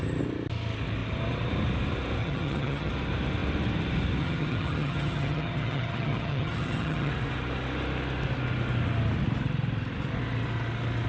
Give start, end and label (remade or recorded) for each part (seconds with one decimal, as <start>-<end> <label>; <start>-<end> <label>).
0.0-2.2 recorded; 2.2-2.9 remade; 2.9-4.2 recorded; 4.2-7.1 remade; 7.1-11.1 recorded